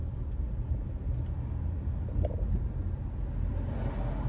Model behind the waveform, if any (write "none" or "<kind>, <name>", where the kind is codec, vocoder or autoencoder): none